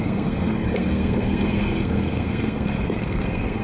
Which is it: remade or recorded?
remade